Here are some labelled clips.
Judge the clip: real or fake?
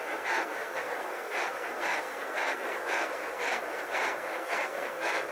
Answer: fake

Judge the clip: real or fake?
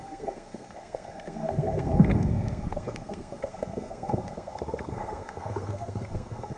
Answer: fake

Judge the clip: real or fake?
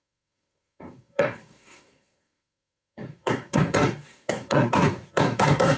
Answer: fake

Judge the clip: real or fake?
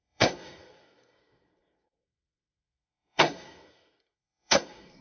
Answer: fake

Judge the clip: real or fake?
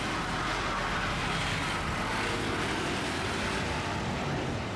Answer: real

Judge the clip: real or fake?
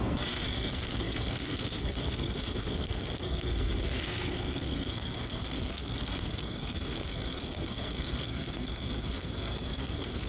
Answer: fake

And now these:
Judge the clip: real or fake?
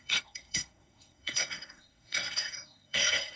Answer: fake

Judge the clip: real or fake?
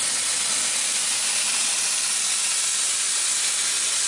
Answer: real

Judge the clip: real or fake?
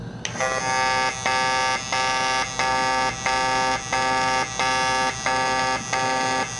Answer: real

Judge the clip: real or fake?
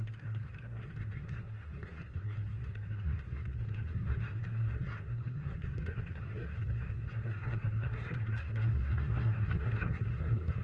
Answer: fake